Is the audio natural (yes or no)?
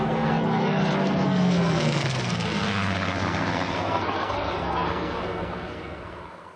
no